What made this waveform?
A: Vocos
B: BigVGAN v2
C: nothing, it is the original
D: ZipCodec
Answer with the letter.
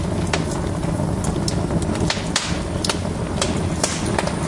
C